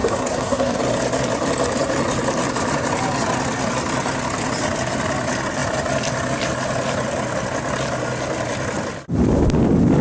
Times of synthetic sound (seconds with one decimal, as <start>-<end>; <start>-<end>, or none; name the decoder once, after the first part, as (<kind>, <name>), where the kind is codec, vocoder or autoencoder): 0.0-0.8 (codec, SNAC)